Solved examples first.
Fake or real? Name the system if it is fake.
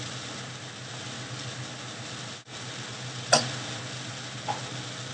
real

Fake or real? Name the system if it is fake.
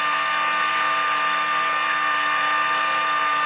real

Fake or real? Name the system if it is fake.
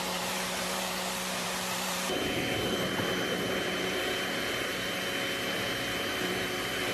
fake, vocoder, BigVGAN v2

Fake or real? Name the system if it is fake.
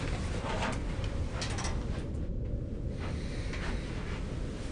real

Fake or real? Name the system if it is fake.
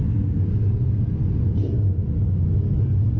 real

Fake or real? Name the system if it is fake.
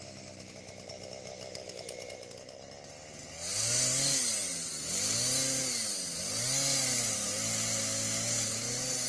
real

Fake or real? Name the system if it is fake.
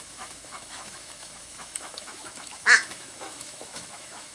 fake, autoencoder, DAC-VAE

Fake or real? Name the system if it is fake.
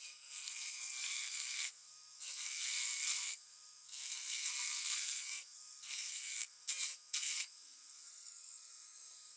fake, codec, SNAC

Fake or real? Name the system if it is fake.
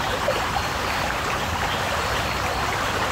fake, vocoder, BigVGAN v2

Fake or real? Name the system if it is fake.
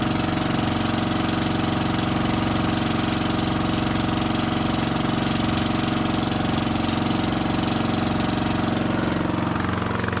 real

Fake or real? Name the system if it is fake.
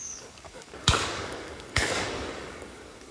fake, codec, DAC